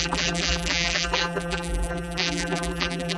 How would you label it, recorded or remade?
remade